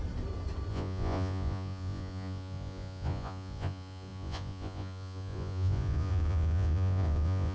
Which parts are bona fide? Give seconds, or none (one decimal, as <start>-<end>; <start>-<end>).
0.0-0.7